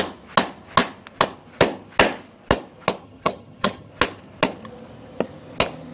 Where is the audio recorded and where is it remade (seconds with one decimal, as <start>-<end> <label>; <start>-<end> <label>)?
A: 0.0-3.0 recorded; 3.0-3.9 remade; 3.9-5.9 recorded